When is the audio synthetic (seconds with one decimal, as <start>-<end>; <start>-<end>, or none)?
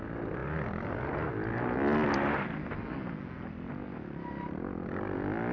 none